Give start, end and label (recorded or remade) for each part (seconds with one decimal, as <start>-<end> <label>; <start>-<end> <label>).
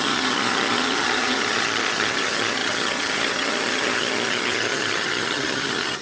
0.0-6.0 remade